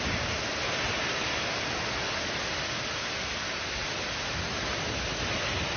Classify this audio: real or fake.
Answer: real